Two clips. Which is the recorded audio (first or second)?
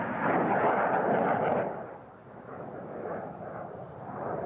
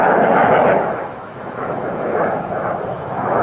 first